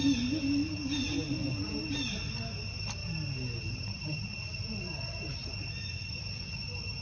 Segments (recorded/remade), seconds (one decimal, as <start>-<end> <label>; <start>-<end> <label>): 0.0-7.0 recorded